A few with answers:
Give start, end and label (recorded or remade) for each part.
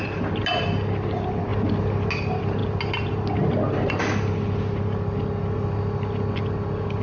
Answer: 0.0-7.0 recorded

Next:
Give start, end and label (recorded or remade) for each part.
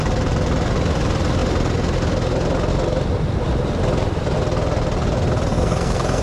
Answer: 0.0-5.5 recorded; 5.5-6.2 remade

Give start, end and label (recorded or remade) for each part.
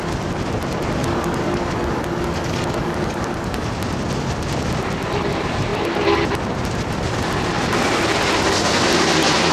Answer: 0.0-1.0 recorded; 1.0-3.7 remade; 3.7-9.5 recorded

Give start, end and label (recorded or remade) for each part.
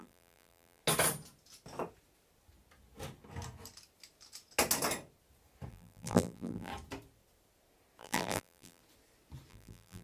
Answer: 0.0-0.8 remade; 0.8-5.7 recorded; 5.7-6.7 remade; 6.7-8.0 recorded; 8.0-8.8 remade; 8.8-9.5 recorded; 9.5-10.0 remade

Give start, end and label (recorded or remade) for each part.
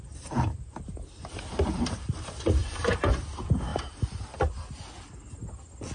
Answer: 0.0-2.6 recorded; 2.6-3.1 remade; 3.1-5.9 recorded